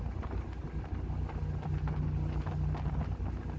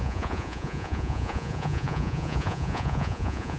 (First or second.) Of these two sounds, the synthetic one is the second